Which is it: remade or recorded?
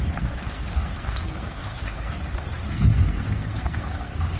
remade